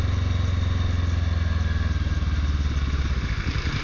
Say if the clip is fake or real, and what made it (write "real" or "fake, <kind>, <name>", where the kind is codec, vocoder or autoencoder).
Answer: real